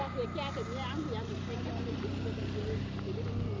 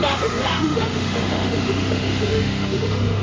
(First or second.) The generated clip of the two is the second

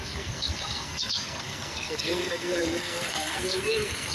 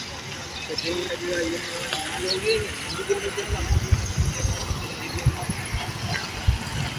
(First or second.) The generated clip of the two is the first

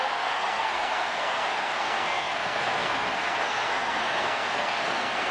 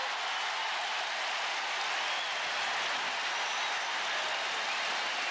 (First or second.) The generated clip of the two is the first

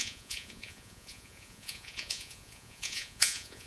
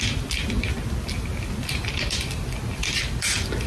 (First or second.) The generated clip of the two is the first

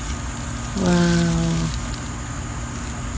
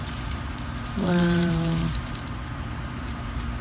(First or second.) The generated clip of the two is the second